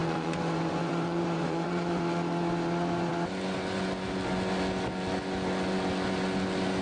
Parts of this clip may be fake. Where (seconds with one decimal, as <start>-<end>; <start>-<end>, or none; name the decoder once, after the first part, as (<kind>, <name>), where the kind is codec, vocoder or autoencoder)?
0.0-2.0 (vocoder, Vocos)